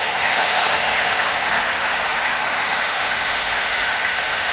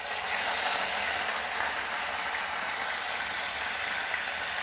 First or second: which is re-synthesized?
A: first